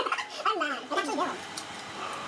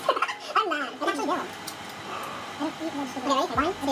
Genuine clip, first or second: second